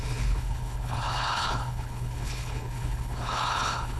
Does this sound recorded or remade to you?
remade